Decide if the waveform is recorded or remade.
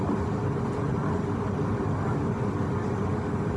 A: recorded